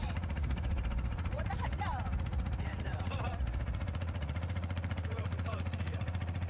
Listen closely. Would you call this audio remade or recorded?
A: remade